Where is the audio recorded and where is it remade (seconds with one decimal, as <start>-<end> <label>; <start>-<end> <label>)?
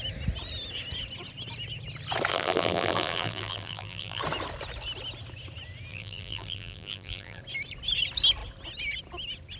0.0-2.3 recorded; 2.3-4.2 remade; 4.2-5.9 recorded; 5.9-7.4 remade; 7.4-9.6 recorded